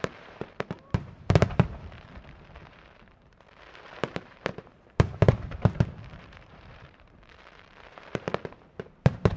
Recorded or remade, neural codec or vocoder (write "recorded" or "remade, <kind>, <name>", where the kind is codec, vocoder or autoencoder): remade, vocoder, BigVGAN v2